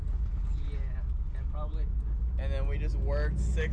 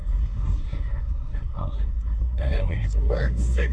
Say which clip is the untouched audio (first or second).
first